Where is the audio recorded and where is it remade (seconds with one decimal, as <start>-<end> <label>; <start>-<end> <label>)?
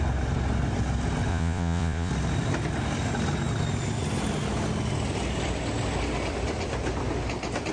0.0-1.3 recorded; 1.3-2.1 remade; 2.1-7.7 recorded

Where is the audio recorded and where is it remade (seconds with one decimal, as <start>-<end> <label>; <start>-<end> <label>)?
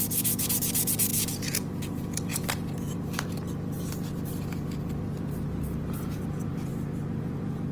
0.0-2.3 remade; 2.3-5.9 recorded; 5.9-6.7 remade; 6.7-7.2 recorded; 7.2-7.7 remade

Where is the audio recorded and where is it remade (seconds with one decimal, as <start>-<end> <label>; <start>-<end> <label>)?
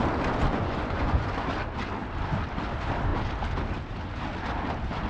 0.0-0.5 recorded; 0.5-1.3 remade; 1.3-5.1 recorded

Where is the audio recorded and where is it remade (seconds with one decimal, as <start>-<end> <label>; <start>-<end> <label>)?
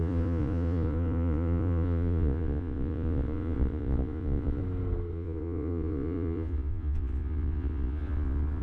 0.0-4.6 remade; 4.6-5.1 recorded; 5.1-8.6 remade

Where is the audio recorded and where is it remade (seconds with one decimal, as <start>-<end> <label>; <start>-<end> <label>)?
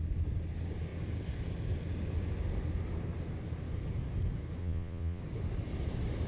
0.0-4.6 recorded; 4.6-5.2 remade; 5.2-6.3 recorded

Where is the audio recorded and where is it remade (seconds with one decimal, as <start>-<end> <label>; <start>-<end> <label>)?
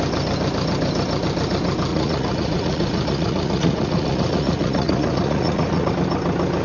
0.0-1.9 recorded; 1.9-5.9 remade; 5.9-6.6 recorded